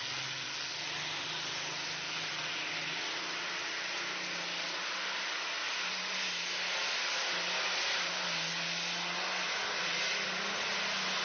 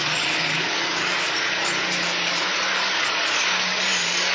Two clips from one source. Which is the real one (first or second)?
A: first